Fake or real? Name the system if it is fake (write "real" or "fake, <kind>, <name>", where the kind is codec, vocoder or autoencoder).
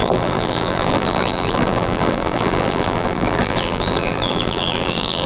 fake, vocoder, BigVGAN v2